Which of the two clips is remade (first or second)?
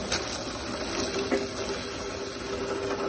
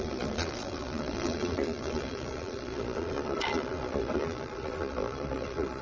second